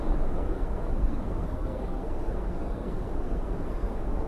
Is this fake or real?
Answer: fake